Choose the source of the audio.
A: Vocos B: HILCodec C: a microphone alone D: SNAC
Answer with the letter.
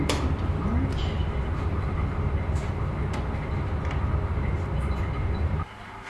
C